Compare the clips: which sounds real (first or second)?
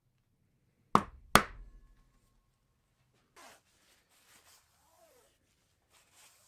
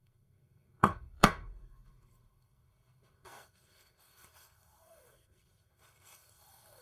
first